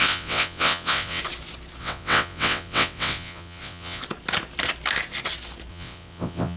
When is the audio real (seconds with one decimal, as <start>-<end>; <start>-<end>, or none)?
1.2-1.8; 4.0-5.7